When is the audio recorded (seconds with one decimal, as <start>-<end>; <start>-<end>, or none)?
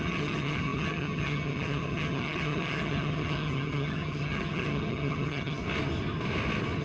5.6-6.8